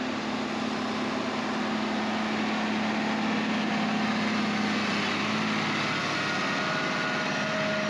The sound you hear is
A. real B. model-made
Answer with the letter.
A